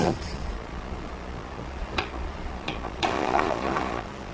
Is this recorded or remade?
remade